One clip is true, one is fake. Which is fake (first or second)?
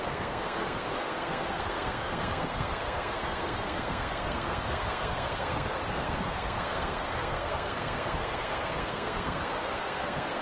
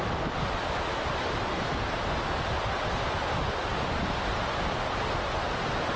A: first